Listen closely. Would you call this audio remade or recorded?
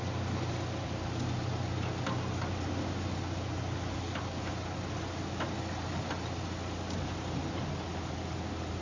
recorded